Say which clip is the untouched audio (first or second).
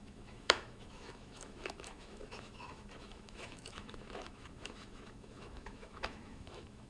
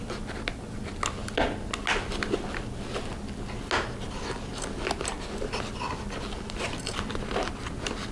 second